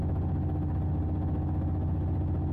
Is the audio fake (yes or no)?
no